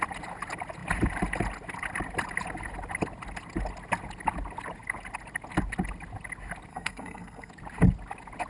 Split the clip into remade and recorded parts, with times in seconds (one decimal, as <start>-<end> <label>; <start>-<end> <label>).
0.0-6.7 recorded; 6.7-7.5 remade; 7.5-8.5 recorded